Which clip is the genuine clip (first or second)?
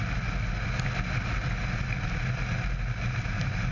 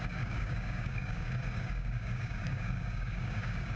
first